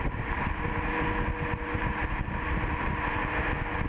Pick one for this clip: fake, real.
real